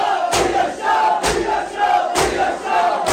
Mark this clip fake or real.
real